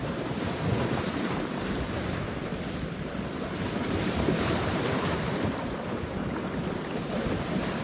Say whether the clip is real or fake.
fake